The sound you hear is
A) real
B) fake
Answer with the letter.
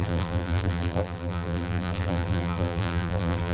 B